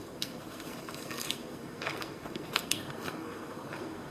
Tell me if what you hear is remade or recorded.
remade